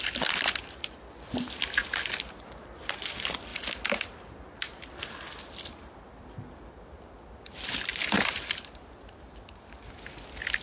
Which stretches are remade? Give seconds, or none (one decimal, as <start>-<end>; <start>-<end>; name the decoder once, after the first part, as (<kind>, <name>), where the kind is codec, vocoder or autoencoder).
none